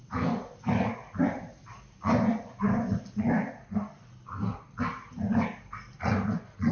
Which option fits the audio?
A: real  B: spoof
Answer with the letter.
A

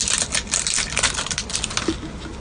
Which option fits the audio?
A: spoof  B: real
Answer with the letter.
B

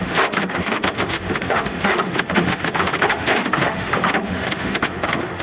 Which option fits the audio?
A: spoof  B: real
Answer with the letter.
A